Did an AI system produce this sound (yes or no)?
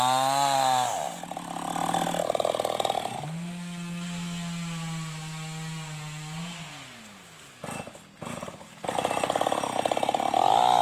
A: no